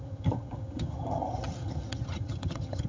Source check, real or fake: fake